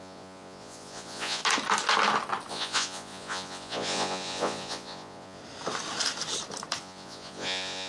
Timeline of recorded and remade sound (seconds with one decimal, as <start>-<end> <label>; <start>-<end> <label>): 0.0-1.4 remade; 1.4-2.5 recorded; 2.5-5.4 remade; 5.4-6.8 recorded; 6.8-7.9 remade